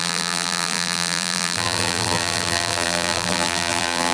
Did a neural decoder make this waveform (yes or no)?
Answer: yes